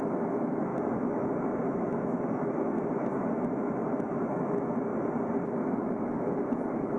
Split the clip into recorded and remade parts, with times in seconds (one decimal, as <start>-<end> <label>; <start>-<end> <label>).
0.0-4.9 remade; 4.9-5.5 recorded; 5.5-7.0 remade